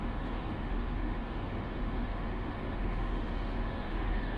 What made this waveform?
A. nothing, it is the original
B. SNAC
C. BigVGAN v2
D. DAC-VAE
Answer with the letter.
D